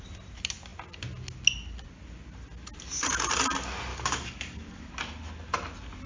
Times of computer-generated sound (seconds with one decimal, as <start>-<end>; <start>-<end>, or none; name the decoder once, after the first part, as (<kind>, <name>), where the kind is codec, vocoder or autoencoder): 3.9-4.9 (codec, DAC)